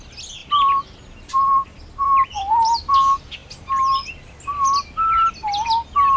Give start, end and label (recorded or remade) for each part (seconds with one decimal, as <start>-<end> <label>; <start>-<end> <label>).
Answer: 0.0-0.4 recorded; 0.4-2.9 remade; 2.9-6.2 recorded